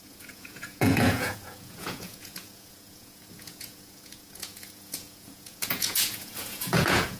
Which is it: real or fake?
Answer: fake